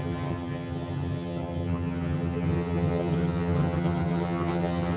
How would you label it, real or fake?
fake